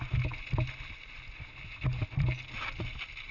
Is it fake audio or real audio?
real